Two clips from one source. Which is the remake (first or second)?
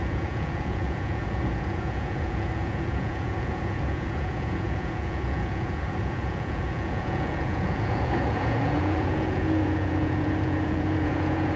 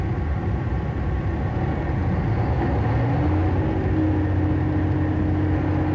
first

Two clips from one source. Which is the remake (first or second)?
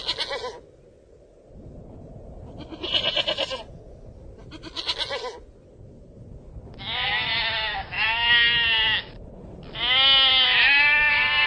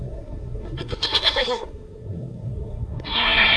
second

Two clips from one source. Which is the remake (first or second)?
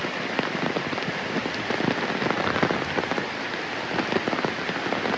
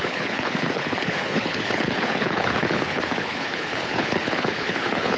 second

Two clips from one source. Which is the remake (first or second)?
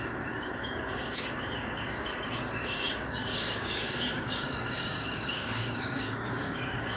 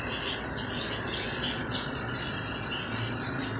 first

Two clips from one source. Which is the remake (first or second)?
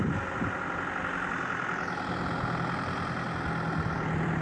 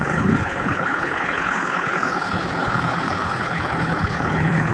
second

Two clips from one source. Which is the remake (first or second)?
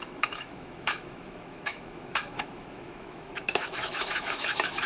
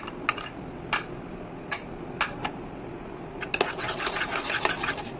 first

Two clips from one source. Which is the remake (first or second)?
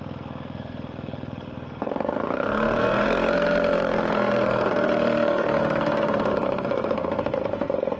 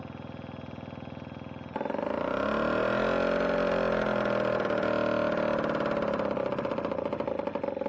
first